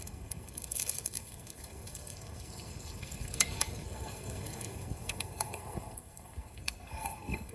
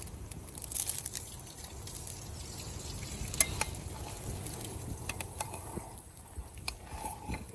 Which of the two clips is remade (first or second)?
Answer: first